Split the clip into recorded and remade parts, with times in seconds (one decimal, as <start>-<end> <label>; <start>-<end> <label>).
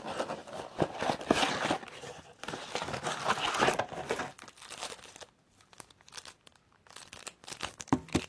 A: 0.0-8.3 recorded